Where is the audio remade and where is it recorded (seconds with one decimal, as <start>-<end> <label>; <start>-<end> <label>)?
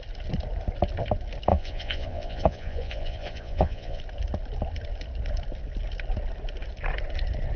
0.0-1.5 recorded; 1.5-4.0 remade; 4.0-7.6 recorded